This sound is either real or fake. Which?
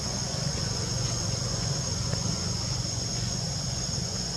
fake